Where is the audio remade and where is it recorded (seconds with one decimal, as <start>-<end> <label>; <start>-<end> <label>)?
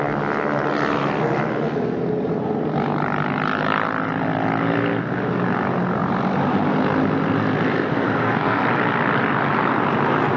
0.0-7.9 recorded; 7.9-8.6 remade; 8.6-10.4 recorded